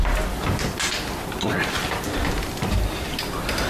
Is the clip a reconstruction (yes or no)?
no